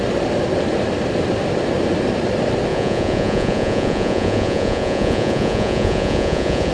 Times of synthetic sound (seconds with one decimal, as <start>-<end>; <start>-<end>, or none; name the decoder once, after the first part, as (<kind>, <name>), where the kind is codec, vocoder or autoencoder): 2.7-6.7 (vocoder, Vocos)